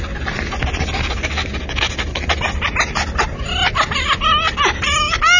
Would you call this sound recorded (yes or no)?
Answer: yes